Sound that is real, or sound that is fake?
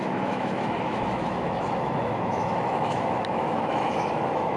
fake